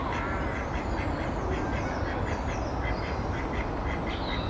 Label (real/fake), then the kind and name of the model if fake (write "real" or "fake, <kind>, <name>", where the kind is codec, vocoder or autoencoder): real